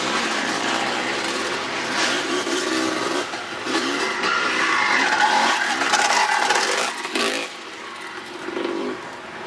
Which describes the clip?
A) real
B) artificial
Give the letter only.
A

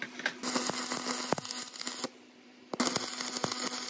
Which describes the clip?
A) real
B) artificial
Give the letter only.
A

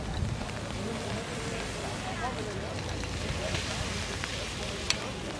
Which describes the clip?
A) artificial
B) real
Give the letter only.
B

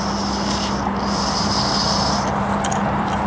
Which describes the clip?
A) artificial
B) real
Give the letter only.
B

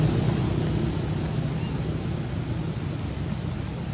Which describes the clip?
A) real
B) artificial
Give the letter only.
A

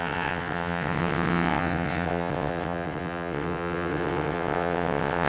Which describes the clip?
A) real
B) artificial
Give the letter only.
B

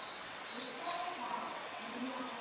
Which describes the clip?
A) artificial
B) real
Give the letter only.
A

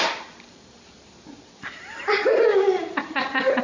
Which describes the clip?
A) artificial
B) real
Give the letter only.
B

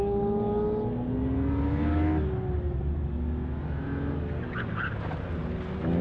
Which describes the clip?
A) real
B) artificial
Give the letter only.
A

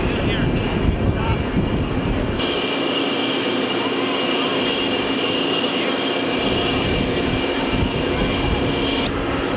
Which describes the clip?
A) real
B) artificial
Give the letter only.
A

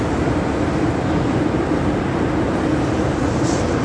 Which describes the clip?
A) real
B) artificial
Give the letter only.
A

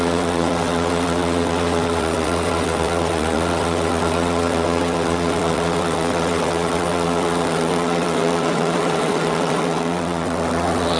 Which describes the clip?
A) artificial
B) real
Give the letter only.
A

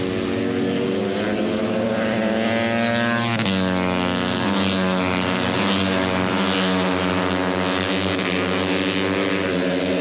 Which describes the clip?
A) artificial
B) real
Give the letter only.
B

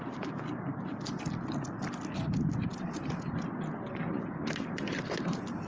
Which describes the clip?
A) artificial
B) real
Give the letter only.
B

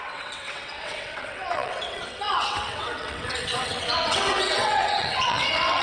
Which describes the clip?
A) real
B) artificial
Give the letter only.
B